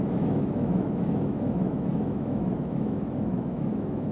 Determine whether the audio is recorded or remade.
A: remade